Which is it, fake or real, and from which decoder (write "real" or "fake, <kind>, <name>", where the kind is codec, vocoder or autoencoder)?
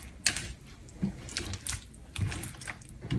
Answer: real